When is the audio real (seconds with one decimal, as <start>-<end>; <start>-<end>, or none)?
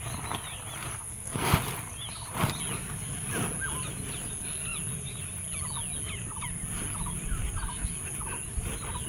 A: 0.0-0.9; 1.5-9.1